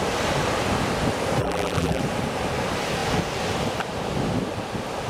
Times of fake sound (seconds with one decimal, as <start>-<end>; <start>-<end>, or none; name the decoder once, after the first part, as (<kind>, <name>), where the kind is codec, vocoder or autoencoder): 1.4-2.0 (vocoder, BigVGAN v2)